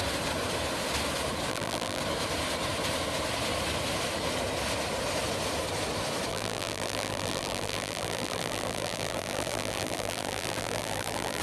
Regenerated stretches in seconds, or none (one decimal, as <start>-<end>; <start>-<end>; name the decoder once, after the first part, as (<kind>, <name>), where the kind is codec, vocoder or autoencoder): 1.5-2.0 (vocoder, BigVGAN v2); 6.3-11.4